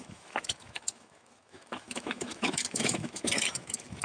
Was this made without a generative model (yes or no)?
no